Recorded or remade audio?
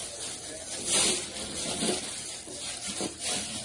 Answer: recorded